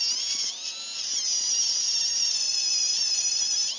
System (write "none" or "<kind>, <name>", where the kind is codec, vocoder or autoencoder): none